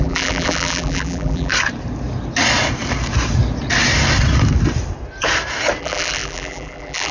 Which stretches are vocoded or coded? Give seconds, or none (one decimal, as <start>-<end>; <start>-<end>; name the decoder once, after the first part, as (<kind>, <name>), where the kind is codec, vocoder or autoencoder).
0.0-1.5 (vocoder, BigVGAN v2); 5.8-7.1